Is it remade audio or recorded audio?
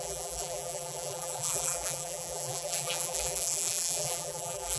remade